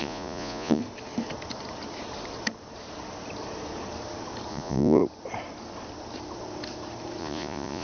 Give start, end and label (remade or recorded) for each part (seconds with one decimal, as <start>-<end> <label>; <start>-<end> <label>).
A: 0.0-0.8 remade; 0.8-4.5 recorded; 4.5-5.0 remade; 5.0-7.2 recorded; 7.2-7.8 remade